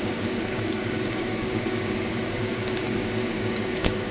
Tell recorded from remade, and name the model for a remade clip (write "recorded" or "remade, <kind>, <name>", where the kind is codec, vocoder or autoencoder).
remade, codec, DAC